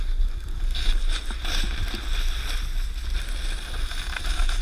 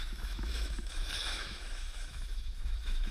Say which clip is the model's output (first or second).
second